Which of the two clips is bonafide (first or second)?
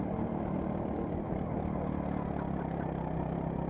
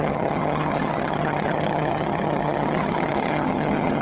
first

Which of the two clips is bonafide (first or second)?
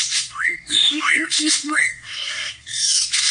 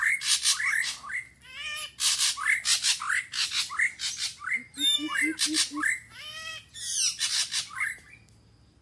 second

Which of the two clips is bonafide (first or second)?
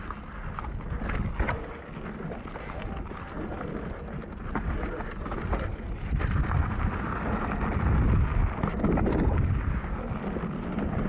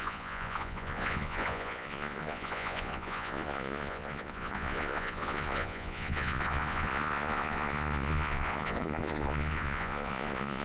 first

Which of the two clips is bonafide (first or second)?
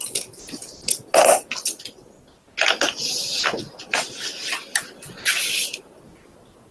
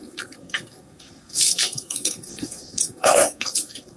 first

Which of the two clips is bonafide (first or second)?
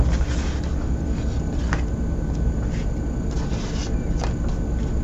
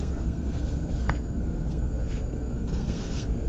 first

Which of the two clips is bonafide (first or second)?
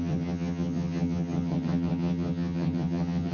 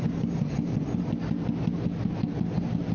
second